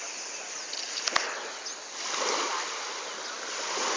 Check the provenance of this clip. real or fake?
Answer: real